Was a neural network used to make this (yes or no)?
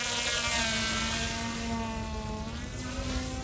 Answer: no